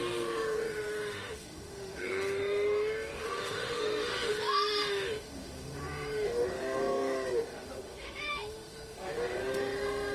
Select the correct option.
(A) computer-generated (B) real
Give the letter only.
A